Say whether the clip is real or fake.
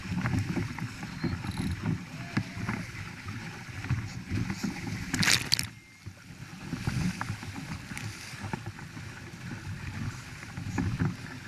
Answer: real